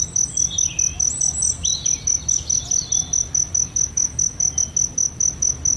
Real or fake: real